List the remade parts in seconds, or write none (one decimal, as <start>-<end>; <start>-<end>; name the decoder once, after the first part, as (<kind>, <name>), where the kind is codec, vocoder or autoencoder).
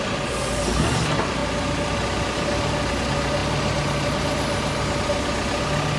none